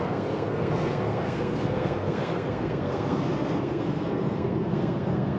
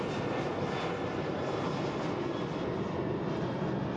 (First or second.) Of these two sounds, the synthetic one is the first